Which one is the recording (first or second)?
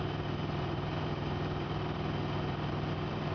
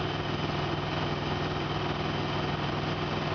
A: second